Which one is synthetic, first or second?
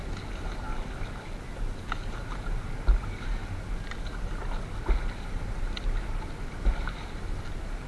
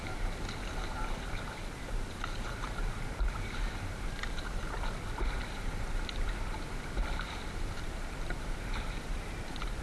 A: second